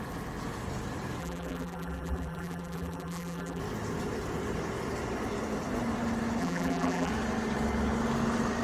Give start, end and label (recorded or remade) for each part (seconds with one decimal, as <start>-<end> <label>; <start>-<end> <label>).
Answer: 0.0-1.2 recorded; 1.2-3.6 remade; 3.6-6.4 recorded; 6.4-7.1 remade; 7.1-8.6 recorded